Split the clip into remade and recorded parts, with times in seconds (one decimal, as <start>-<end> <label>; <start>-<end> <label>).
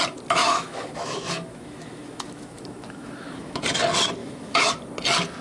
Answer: 0.0-0.4 recorded; 0.4-3.6 remade; 3.6-4.2 recorded; 4.2-4.7 remade; 4.7-5.4 recorded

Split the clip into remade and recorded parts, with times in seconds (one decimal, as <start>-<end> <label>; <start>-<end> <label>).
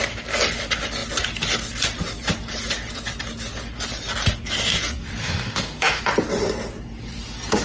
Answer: 0.0-5.2 recorded; 5.2-6.0 remade; 6.0-7.6 recorded